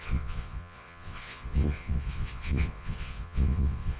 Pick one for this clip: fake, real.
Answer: fake